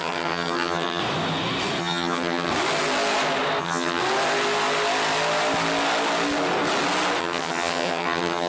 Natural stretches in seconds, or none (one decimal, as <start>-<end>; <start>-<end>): 1.0-1.8; 2.5-3.6; 4.0-7.2